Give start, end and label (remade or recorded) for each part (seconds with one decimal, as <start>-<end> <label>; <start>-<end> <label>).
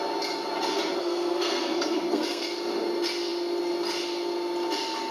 0.0-1.0 recorded; 1.0-2.4 remade; 2.4-5.1 recorded